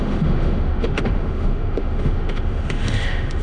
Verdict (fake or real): fake